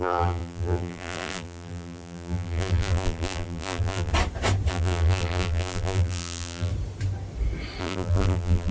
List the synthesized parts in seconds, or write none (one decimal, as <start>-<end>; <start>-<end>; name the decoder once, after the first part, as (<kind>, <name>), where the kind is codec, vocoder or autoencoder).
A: 0.0-4.1 (vocoder, BigVGAN v2); 4.7-6.7; 7.8-8.7